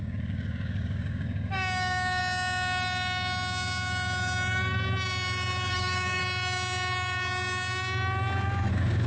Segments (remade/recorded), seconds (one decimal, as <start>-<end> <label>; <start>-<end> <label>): 0.0-2.2 remade; 2.2-5.7 recorded; 5.7-6.2 remade; 6.2-8.7 recorded; 8.7-9.1 remade